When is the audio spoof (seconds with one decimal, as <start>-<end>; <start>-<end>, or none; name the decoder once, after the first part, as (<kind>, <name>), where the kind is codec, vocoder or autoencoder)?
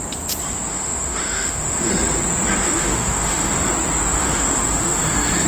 0.7-1.9 (autoencoder, DAC-VAE); 2.6-3.5; 4.2-5.0